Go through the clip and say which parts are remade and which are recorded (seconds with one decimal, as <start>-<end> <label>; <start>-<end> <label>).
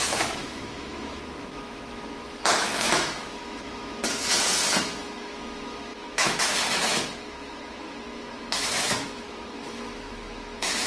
0.0-4.0 remade; 4.0-4.8 recorded; 4.8-10.9 remade